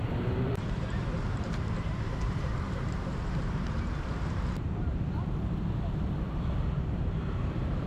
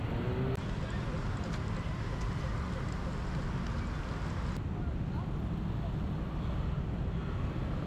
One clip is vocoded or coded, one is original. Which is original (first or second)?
second